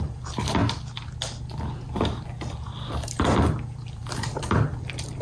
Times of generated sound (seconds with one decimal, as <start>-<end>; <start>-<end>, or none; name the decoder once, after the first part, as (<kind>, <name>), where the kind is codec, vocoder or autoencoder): 0.0-0.6 (vocoder, BigVGAN v2); 2.6-4.0; 4.7-5.2